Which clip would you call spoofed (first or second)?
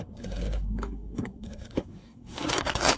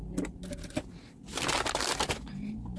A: first